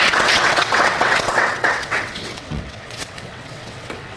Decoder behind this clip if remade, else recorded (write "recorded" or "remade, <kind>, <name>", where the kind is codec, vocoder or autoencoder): remade, vocoder, WaveNeXt